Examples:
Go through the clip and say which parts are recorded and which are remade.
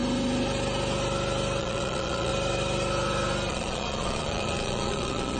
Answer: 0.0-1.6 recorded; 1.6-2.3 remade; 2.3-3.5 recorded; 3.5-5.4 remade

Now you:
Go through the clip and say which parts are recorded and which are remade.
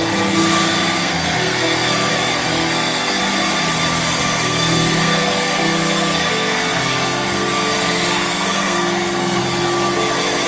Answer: 0.0-1.0 recorded; 1.0-2.1 remade; 2.1-2.5 recorded; 2.5-3.2 remade; 3.2-4.2 recorded; 4.2-9.4 remade; 9.4-10.5 recorded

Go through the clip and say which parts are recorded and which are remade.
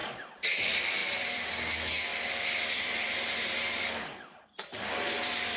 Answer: 0.0-1.0 recorded; 1.0-1.5 remade; 1.5-2.1 recorded; 2.1-3.8 remade; 3.8-4.7 recorded; 4.7-5.6 remade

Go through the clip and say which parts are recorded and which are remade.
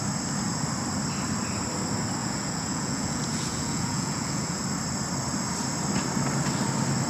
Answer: 0.0-2.2 recorded; 2.2-4.6 remade; 4.6-7.1 recorded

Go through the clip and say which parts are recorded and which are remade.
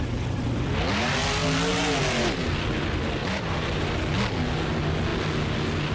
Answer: 0.0-3.2 recorded; 3.2-3.8 remade; 3.8-5.9 recorded